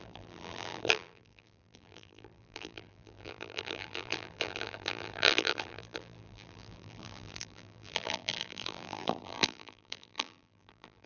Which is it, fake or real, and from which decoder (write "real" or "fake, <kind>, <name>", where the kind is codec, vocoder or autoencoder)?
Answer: fake, vocoder, BigVGAN v2